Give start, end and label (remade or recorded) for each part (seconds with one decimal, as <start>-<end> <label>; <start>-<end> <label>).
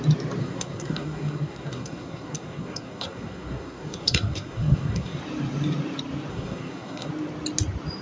0.0-0.4 recorded; 0.4-5.2 remade; 5.2-6.3 recorded; 6.3-7.1 remade; 7.1-8.0 recorded